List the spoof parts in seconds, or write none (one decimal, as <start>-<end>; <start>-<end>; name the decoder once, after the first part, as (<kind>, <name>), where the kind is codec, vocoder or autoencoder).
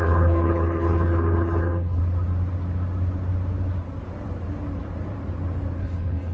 0.0-2.0 (codec, HILCodec); 5.8-6.3